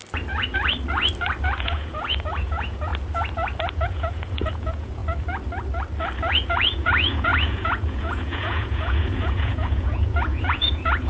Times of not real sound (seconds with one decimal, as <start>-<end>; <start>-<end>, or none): 1.6-2.9; 3.7-5.0; 6.3-11.1